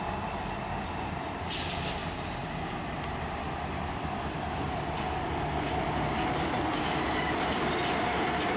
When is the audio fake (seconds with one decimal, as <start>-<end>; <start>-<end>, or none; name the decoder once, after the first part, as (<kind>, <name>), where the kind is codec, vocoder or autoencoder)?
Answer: 0.0-2.0 (vocoder, BigVGAN v2); 7.2-8.6